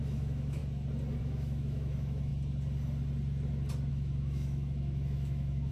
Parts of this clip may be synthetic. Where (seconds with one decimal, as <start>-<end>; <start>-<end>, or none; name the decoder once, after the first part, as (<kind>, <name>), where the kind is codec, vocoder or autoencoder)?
0.0-0.6 (autoencoder, DAC-VAE); 1.2-2.3; 3.9-5.7